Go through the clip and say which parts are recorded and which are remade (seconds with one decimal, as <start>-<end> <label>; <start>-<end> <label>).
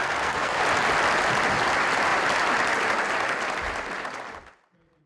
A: 0.0-0.6 remade; 0.6-5.1 recorded